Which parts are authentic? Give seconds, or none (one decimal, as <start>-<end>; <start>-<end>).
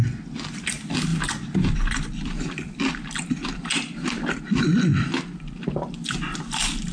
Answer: 0.0-1.1; 4.4-4.9; 5.9-6.9